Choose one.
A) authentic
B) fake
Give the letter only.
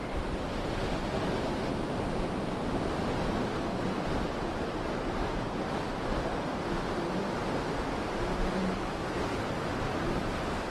A